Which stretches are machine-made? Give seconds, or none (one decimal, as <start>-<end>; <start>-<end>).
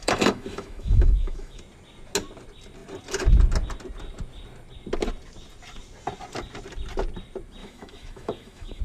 0.0-1.6; 7.6-8.8